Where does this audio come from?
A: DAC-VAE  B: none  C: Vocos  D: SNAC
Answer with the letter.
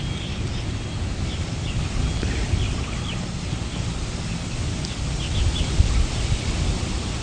B